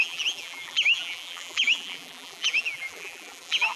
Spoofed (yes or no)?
yes